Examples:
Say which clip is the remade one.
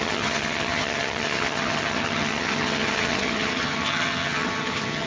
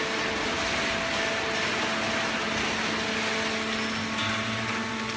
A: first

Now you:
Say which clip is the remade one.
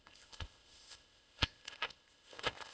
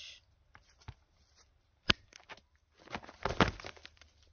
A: first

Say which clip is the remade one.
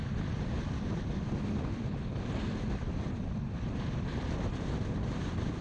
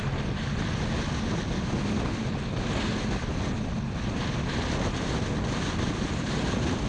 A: first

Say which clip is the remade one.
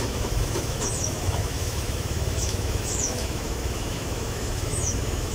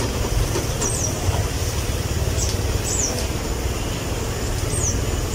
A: first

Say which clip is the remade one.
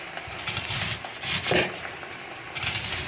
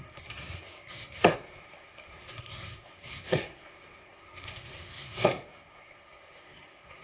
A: second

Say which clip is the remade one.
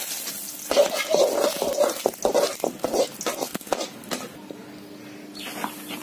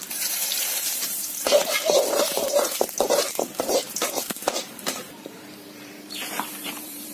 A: second